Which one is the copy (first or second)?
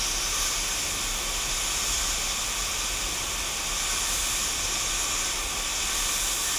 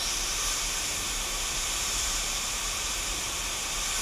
second